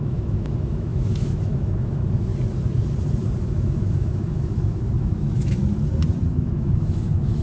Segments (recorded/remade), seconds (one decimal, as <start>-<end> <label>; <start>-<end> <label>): 0.0-2.3 remade; 2.3-3.4 recorded; 3.4-5.6 remade; 5.6-6.3 recorded; 6.3-7.4 remade